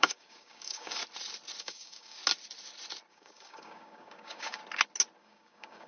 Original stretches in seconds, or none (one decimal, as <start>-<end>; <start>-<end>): 1.0-1.6; 2.2-3.1; 4.6-5.2